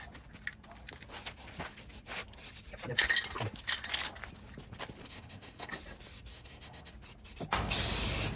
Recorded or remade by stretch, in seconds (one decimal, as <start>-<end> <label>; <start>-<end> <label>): 0.0-5.0 recorded; 5.0-5.7 remade; 5.7-6.3 recorded; 6.3-6.9 remade; 6.9-8.4 recorded